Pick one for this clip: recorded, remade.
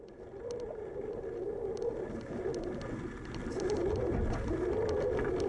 recorded